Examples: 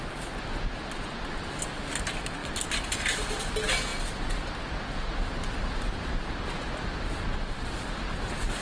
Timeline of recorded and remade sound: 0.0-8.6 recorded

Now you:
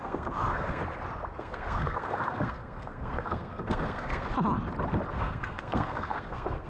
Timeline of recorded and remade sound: 0.0-0.8 remade; 0.8-1.4 recorded; 1.4-4.3 remade; 4.3-5.1 recorded; 5.1-6.7 remade

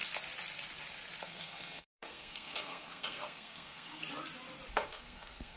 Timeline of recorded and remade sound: 0.0-1.2 recorded; 1.2-4.0 remade; 4.0-4.7 recorded; 4.7-5.6 remade

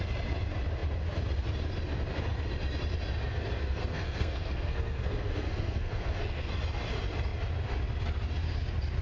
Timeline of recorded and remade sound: 0.0-3.6 recorded; 3.6-6.5 remade; 6.5-9.0 recorded

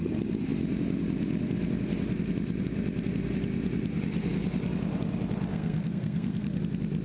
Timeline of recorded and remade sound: 0.0-5.5 recorded; 5.5-6.6 remade; 6.6-7.0 recorded

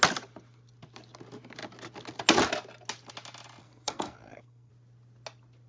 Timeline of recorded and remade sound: 0.0-3.6 recorded; 3.6-4.7 remade; 4.7-5.7 recorded